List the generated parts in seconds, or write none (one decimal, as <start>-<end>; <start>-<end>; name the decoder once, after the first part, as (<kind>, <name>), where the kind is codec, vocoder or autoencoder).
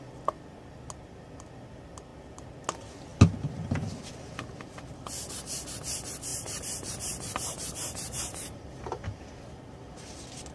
6.3-9.0 (vocoder, BigVGAN v2)